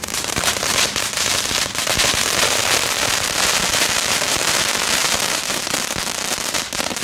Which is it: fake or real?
fake